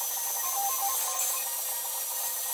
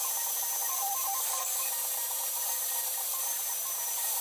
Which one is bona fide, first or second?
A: first